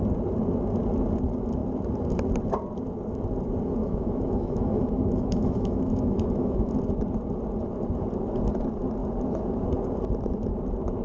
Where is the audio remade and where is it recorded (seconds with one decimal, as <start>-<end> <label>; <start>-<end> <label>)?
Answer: 0.0-3.8 recorded; 3.8-6.7 remade; 6.7-11.0 recorded